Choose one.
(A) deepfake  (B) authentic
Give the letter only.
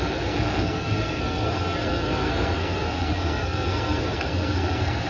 A